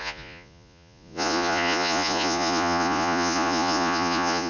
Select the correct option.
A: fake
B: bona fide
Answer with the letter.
A